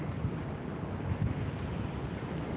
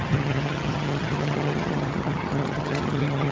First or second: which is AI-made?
second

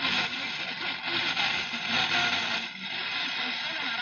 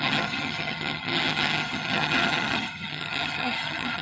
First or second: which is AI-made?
second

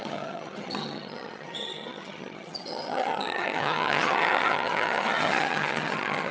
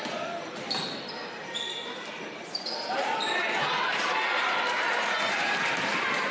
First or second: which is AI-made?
first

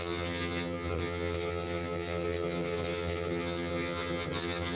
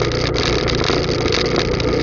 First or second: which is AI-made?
first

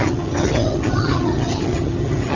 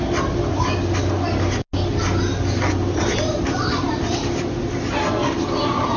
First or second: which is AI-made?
first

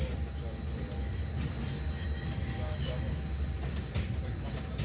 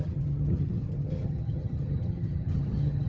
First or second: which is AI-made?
second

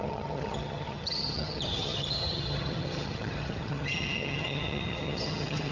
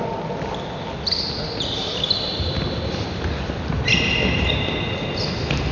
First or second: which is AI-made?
first